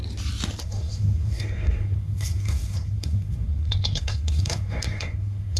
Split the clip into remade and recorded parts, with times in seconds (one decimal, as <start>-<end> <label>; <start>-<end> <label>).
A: 0.0-0.6 recorded; 0.6-5.6 remade